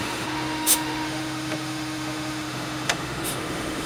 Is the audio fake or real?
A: fake